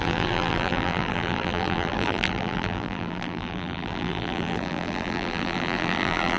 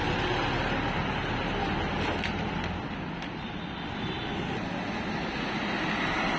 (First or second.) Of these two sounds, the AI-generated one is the first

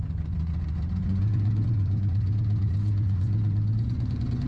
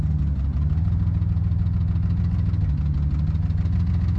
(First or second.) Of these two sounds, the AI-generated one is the first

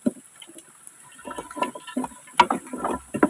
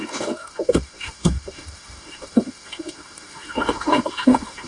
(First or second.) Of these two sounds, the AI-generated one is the second